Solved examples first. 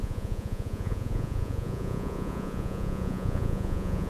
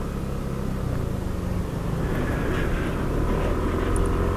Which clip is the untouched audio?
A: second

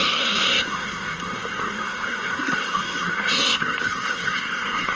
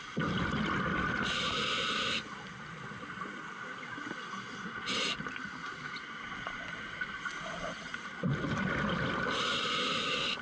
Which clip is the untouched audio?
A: second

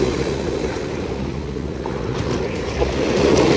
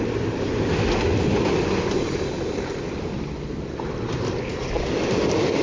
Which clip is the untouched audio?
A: second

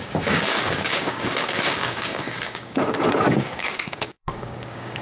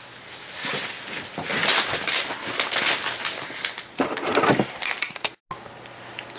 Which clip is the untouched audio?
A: second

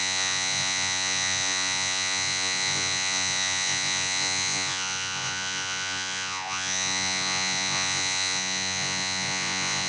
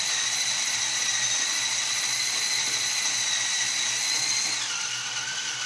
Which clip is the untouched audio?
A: second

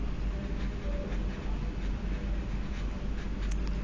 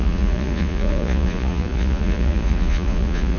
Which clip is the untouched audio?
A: first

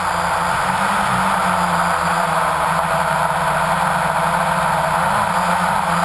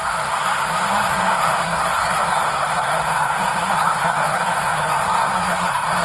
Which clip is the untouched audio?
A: first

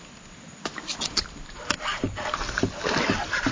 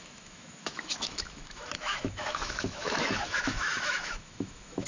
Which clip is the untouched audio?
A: first